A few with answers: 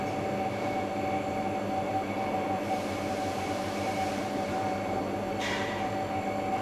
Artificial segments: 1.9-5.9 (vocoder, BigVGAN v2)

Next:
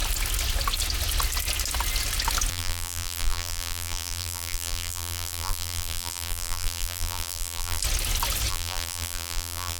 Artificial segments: 2.5-7.8 (vocoder, BigVGAN v2); 8.5-9.8